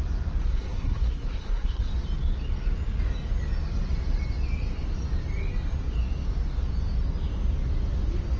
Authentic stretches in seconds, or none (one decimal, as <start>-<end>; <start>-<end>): 0.0-0.4; 1.9-8.4